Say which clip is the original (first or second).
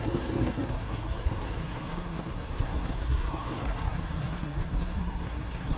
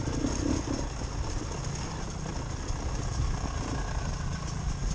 second